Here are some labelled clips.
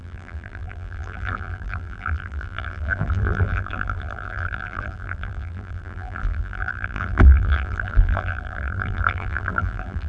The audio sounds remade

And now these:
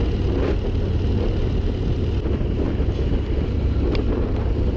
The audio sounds recorded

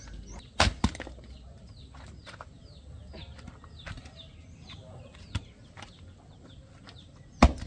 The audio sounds recorded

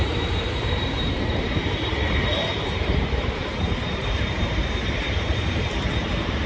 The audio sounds remade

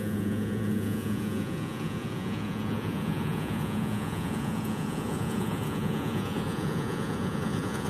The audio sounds remade